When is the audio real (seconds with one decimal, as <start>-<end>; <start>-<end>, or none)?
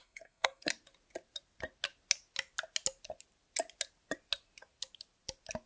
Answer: 0.7-5.7